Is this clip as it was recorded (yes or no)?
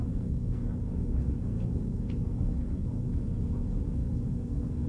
no